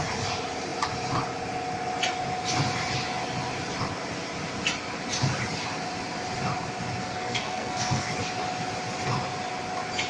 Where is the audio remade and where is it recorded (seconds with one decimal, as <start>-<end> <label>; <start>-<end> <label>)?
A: 0.0-7.0 recorded; 7.0-8.1 remade; 8.1-10.1 recorded